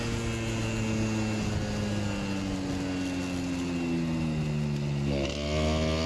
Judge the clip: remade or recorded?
recorded